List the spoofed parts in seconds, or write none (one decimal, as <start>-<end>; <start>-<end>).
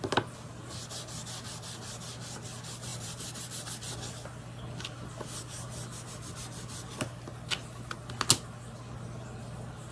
2.9-3.7